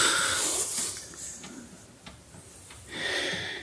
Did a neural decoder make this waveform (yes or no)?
no